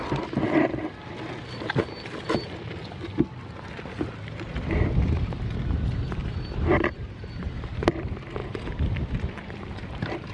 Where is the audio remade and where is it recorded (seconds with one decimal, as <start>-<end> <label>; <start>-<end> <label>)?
0.0-6.2 recorded; 6.2-7.8 remade; 7.8-10.3 recorded